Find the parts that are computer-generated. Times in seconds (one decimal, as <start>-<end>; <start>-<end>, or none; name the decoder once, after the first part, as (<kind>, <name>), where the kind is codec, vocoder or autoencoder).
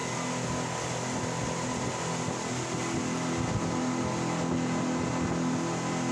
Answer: none